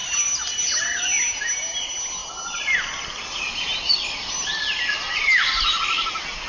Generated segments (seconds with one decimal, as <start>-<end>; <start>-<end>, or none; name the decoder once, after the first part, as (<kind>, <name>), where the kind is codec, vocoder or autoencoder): 0.0-1.5 (vocoder, BigVGAN v2)